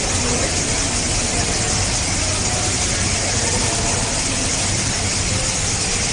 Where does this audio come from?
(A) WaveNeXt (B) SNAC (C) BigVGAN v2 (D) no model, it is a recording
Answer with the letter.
D